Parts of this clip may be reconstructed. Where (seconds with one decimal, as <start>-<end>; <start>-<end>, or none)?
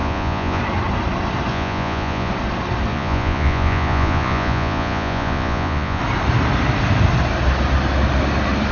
0.0-0.6; 1.5-2.3; 2.9-6.0